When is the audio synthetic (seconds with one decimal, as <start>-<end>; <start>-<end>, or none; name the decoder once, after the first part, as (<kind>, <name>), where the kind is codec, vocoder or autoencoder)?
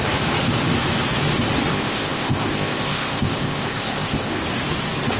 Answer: 1.7-4.4 (codec, ZipCodec)